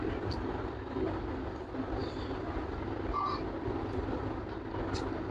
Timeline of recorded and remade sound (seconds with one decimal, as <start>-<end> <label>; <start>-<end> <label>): 0.0-5.3 recorded